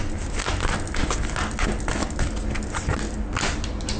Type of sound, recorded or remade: recorded